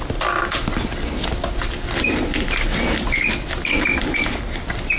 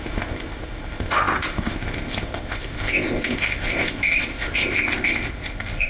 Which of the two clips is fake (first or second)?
second